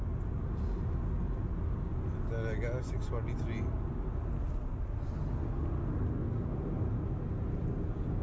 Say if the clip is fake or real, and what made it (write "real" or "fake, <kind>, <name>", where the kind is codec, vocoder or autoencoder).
real